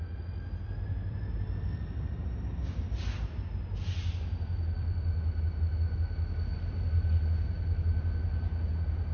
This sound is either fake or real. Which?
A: real